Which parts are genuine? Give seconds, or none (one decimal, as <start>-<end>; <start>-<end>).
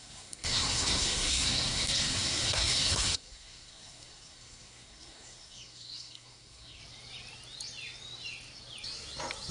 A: 6.8-9.5